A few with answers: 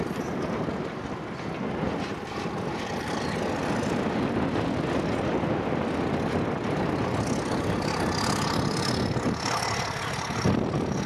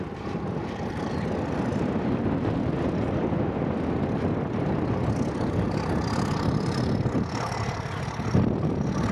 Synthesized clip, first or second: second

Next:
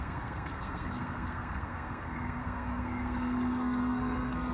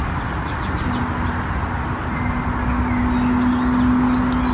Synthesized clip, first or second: first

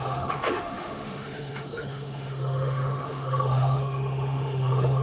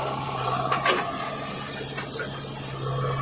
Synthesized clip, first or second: first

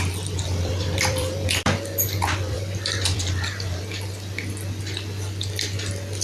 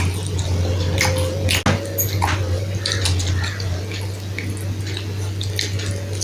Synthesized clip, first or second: first